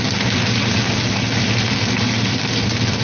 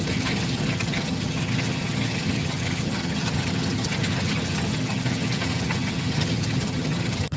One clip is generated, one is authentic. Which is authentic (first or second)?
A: first